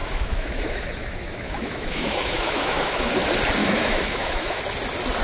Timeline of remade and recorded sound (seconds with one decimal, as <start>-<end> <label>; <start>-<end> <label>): 0.0-3.1 remade; 3.1-3.6 recorded; 3.6-4.6 remade; 4.6-5.2 recorded